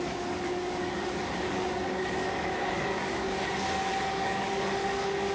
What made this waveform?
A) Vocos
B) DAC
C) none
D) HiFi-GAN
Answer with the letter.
B